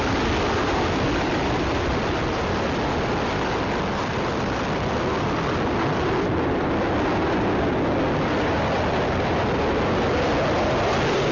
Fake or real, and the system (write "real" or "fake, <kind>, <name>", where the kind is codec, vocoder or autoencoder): real